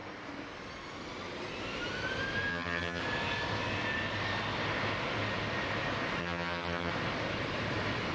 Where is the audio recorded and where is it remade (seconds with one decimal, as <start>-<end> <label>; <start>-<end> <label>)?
0.0-2.5 recorded; 2.5-3.0 remade; 3.0-6.2 recorded; 6.2-6.9 remade; 6.9-8.1 recorded